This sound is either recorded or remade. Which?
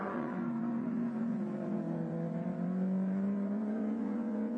remade